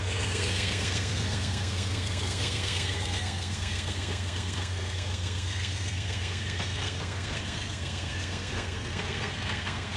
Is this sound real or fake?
fake